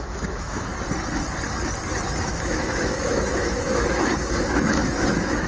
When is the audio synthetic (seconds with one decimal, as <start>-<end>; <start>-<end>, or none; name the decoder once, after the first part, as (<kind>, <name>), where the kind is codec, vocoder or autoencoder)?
0.0-0.7 (autoencoder, DAC-VAE); 2.2-5.5